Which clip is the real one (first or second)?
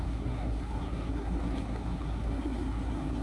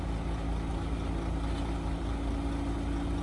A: second